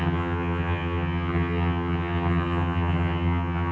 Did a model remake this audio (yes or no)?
yes